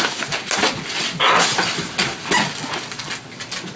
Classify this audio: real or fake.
real